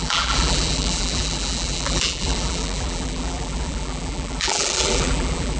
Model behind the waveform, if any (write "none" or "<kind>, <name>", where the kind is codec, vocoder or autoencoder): vocoder, BigVGAN v2